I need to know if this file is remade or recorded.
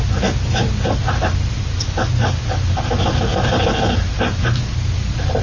recorded